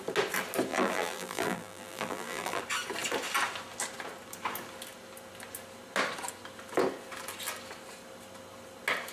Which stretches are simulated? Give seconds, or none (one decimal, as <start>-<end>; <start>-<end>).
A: 0.7-2.6